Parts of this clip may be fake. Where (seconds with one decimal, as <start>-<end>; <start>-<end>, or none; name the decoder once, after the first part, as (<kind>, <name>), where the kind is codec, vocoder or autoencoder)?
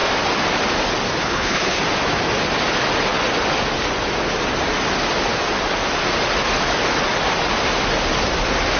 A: 1.2-1.8 (codec, HILCodec)